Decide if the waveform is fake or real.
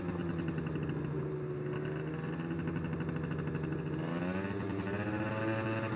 real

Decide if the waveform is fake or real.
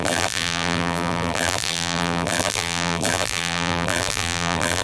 fake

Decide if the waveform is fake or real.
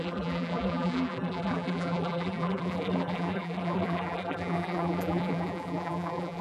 fake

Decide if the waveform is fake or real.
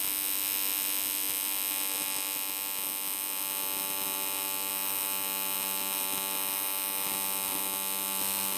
real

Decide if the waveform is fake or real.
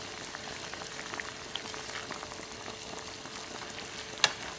real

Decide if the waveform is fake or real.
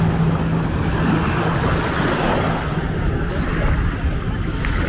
real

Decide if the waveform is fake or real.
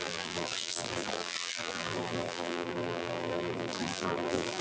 fake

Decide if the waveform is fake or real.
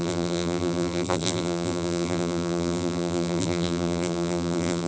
fake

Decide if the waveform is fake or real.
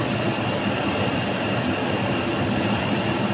real